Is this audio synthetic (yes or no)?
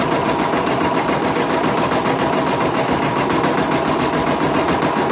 yes